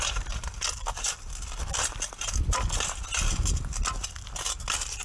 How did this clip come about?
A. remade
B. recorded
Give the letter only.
B